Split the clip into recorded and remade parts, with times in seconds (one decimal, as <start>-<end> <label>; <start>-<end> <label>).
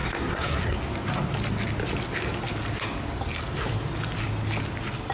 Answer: 0.0-0.6 remade; 0.6-5.1 recorded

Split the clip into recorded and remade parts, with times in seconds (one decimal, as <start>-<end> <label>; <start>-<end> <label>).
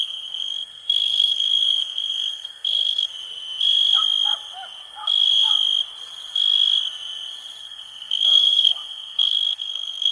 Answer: 0.0-3.1 remade; 3.1-7.6 recorded; 7.6-10.1 remade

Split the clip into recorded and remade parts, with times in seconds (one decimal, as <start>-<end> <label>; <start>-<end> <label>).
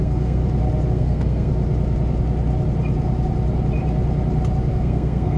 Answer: 0.0-0.4 remade; 0.4-0.9 recorded; 0.9-1.5 remade; 1.5-4.7 recorded; 4.7-5.4 remade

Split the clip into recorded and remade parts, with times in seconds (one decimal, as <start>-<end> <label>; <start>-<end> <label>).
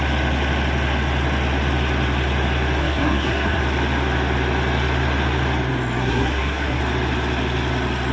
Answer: 0.0-2.8 recorded; 2.8-3.6 remade; 3.6-6.0 recorded; 6.0-6.8 remade; 6.8-8.1 recorded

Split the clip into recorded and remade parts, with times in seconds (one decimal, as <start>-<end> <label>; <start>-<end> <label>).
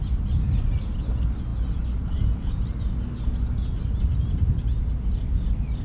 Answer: 0.0-5.8 recorded